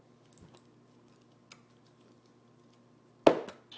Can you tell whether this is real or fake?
real